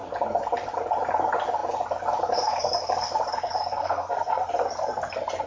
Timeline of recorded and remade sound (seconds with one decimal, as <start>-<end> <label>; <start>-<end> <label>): 0.0-3.8 recorded; 3.8-4.5 remade; 4.5-5.5 recorded